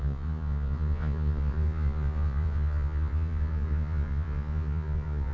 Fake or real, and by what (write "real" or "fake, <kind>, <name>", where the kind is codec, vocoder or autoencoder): fake, vocoder, Vocos